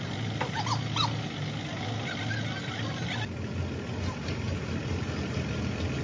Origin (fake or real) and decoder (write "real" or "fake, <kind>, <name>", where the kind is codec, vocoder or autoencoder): real